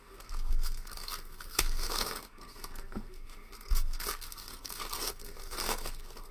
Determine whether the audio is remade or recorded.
remade